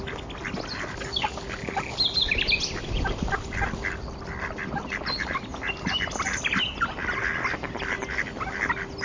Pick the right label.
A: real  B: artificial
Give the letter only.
A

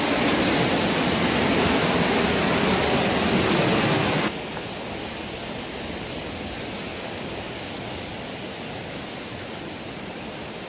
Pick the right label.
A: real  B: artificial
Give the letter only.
A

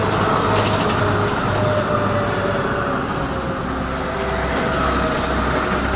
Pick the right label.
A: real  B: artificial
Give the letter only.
A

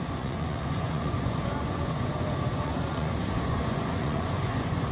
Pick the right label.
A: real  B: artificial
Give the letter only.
B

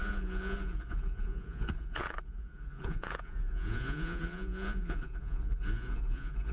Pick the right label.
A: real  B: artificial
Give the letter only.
B